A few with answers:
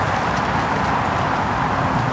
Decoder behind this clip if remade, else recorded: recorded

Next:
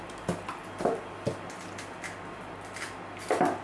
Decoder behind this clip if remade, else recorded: recorded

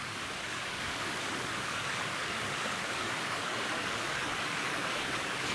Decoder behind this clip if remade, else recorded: remade, codec, DAC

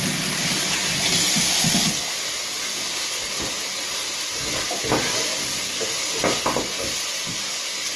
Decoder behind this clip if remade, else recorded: recorded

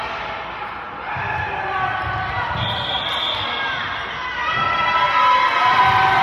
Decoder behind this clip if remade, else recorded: recorded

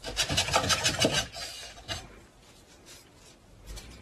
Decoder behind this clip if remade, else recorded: recorded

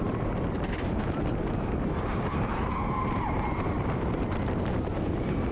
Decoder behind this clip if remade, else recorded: remade, vocoder, BigVGAN v2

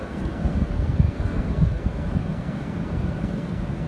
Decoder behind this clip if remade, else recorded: remade, codec, SNAC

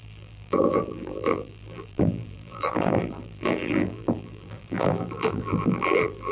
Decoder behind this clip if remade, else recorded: remade, vocoder, BigVGAN v2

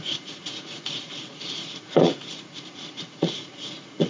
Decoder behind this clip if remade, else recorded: remade, vocoder, Vocos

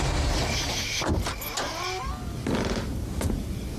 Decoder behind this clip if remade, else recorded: recorded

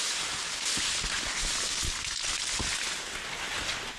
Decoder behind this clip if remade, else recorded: recorded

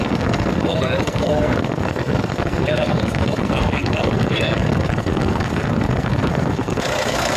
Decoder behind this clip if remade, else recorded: remade, codec, SNAC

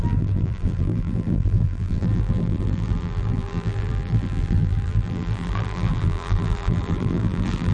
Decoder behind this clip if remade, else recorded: remade, vocoder, BigVGAN v2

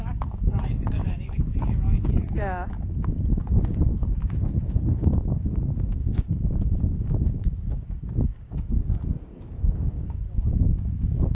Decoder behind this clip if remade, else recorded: remade, codec, DAC